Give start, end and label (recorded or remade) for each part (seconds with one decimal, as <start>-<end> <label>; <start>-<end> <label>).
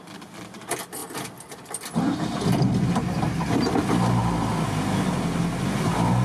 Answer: 0.0-6.2 recorded